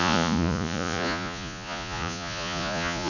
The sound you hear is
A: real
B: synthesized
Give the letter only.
B